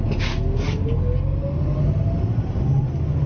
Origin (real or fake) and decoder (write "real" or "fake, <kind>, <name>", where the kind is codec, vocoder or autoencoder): real